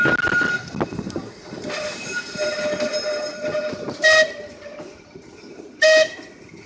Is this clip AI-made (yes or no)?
no